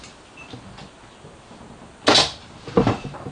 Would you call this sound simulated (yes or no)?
no